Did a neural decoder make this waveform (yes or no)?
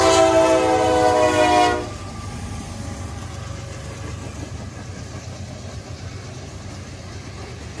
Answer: no